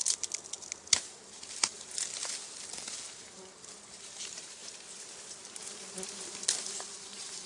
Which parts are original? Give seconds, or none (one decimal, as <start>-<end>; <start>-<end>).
0.0-1.1; 2.1-3.9; 4.6-7.0